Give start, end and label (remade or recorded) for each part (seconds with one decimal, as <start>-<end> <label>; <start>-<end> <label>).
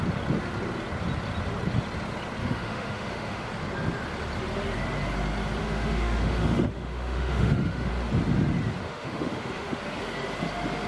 0.0-2.4 recorded; 2.4-3.5 remade; 3.5-5.6 recorded; 5.6-7.9 remade; 7.9-8.8 recorded; 8.8-9.8 remade; 9.8-10.9 recorded